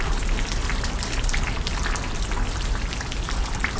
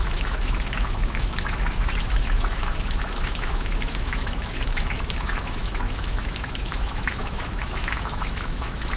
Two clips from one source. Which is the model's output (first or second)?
second